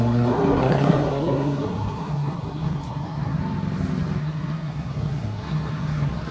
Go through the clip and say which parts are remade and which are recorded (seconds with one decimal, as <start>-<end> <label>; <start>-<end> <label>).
0.0-3.4 remade; 3.4-4.2 recorded; 4.2-6.3 remade